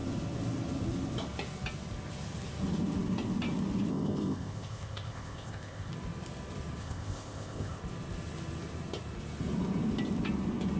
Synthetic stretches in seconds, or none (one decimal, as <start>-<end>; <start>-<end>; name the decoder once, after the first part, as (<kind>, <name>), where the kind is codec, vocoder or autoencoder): 3.9-5.9 (codec, ZipCodec); 6.8-7.8